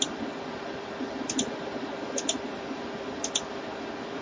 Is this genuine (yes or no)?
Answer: yes